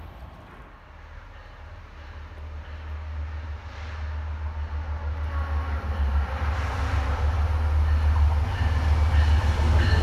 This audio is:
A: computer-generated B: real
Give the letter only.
B